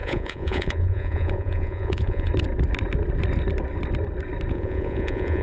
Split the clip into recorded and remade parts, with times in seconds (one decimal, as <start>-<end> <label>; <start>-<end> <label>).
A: 0.0-2.3 remade; 2.3-4.5 recorded; 4.5-5.4 remade